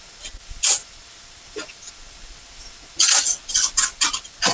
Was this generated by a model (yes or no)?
no